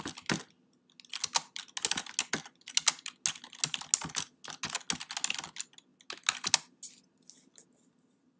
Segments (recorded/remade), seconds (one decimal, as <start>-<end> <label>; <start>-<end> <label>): 0.0-8.4 recorded